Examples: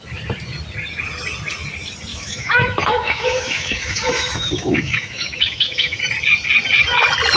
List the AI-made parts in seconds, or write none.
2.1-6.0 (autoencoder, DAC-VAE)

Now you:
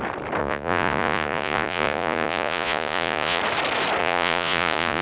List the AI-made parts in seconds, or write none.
0.4-3.4 (vocoder, Vocos); 4.0-5.0